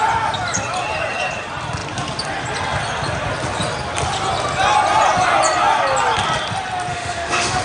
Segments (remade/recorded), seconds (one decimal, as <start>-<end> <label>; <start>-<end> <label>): 0.0-6.9 recorded; 6.9-7.6 remade